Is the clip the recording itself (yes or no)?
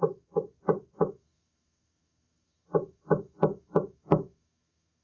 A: no